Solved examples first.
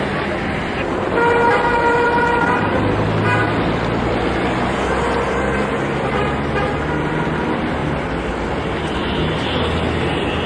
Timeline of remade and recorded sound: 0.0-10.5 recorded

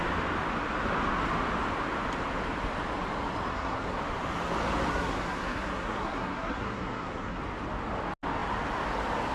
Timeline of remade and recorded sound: 0.0-3.5 recorded; 3.5-4.0 remade; 4.0-4.9 recorded; 4.9-7.4 remade; 7.4-9.3 recorded

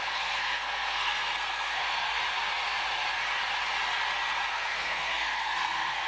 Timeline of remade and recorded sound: 0.0-2.2 remade; 2.2-4.5 recorded; 4.5-6.1 remade

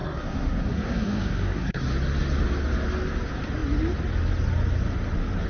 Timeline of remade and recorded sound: 0.0-1.9 remade; 1.9-5.5 recorded

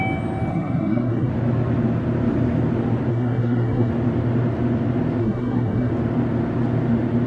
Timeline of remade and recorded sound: 0.0-0.5 recorded; 0.5-1.3 remade; 1.3-3.1 recorded; 3.1-3.9 remade; 3.9-5.2 recorded; 5.2-5.9 remade; 5.9-7.3 recorded

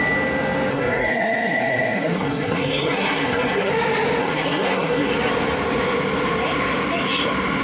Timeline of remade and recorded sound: 0.0-0.7 recorded; 0.7-3.7 remade; 3.7-4.2 recorded; 4.2-5.1 remade; 5.1-7.6 recorded

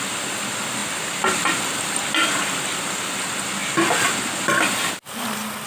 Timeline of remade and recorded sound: 0.0-5.7 recorded

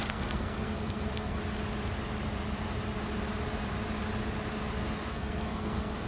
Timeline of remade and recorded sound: 0.0-1.4 remade; 1.4-5.1 recorded; 5.1-6.1 remade